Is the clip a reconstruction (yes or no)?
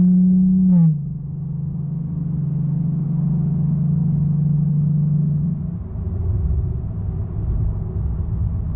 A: no